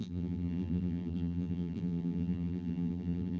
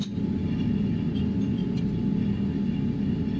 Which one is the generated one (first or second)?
first